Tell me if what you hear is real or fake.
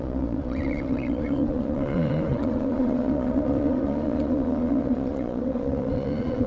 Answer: fake